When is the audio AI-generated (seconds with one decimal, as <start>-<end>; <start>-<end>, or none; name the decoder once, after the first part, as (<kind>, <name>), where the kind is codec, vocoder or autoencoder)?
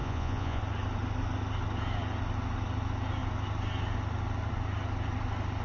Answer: 0.0-0.6 (vocoder, Vocos)